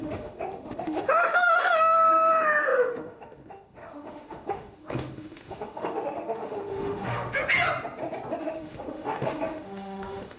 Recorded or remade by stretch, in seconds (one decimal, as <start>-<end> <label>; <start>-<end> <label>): 0.0-7.4 remade; 7.4-8.4 recorded; 8.4-10.4 remade